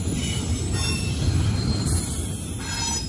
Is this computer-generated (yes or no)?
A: no